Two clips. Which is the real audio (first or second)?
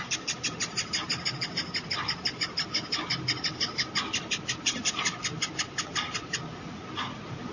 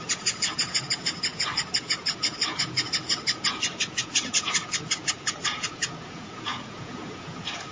first